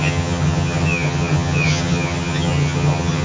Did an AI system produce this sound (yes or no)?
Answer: yes